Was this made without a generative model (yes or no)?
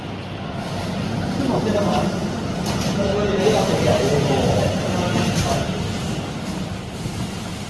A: yes